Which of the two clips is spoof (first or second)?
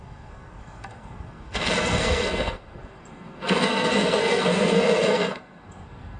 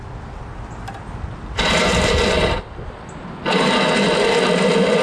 first